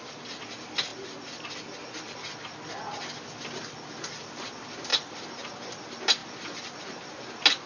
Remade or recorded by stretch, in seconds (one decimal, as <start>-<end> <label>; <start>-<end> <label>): 0.0-4.9 recorded; 4.9-5.7 remade; 5.7-7.7 recorded